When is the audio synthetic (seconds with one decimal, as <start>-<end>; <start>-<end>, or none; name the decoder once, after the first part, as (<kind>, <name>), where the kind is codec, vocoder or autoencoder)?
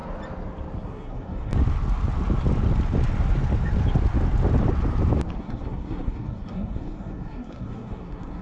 0.8-1.5 (codec, SNAC); 5.4-8.4